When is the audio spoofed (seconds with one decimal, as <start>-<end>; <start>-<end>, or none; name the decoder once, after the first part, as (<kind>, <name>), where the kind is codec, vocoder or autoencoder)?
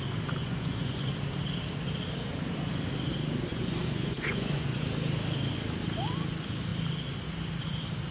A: 0.4-1.1 (vocoder, Vocos); 3.5-4.8